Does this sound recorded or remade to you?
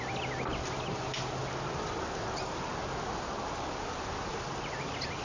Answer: recorded